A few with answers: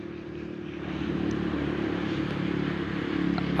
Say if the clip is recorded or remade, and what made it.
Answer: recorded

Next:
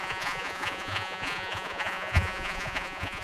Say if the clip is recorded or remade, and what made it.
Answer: remade, vocoder, Vocos